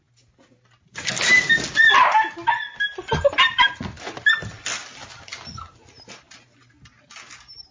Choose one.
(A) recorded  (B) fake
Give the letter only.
A